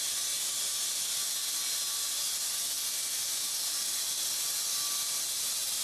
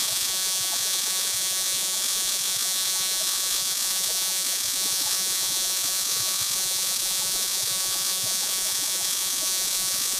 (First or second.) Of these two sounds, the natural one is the first